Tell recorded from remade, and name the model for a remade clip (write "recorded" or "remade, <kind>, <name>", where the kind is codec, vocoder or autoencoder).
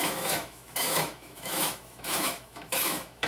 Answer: remade, autoencoder, DAC-VAE